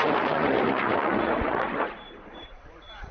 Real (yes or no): no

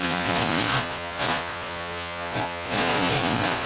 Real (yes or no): no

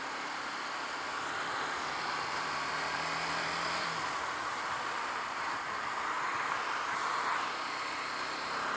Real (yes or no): yes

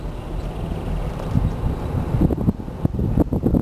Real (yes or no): yes